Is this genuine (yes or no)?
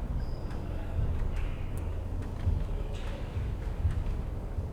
no